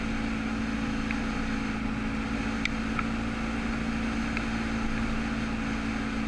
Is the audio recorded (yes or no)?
yes